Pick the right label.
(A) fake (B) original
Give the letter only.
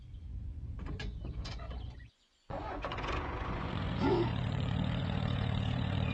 A